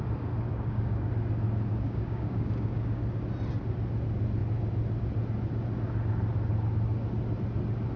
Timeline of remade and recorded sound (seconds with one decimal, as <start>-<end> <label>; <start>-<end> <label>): 0.0-0.5 recorded; 0.5-1.1 remade; 1.1-1.7 recorded; 1.7-3.0 remade; 3.0-8.0 recorded